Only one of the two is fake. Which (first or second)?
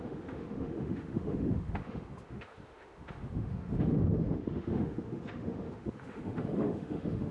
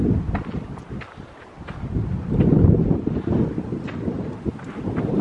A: first